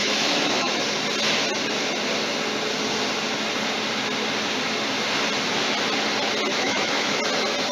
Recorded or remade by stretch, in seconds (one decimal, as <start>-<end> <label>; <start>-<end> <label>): 0.0-0.8 remade; 0.8-6.5 recorded; 6.5-7.2 remade; 7.2-7.7 recorded